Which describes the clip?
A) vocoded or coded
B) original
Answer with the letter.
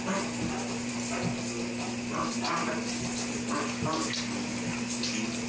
B